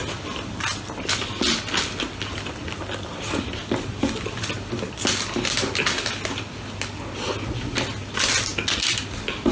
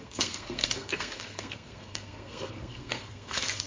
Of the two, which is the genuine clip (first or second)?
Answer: first